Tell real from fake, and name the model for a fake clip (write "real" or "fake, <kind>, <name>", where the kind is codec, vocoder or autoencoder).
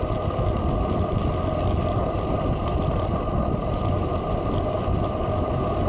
real